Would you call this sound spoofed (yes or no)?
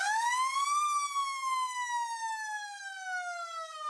yes